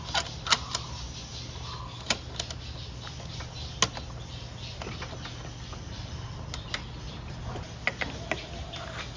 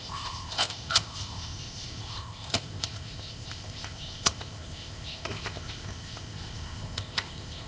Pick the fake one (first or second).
second